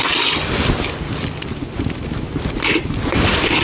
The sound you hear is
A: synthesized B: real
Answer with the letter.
B